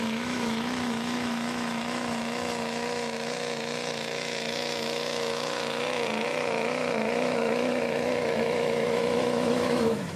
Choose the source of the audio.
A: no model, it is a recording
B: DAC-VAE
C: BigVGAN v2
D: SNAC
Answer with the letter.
B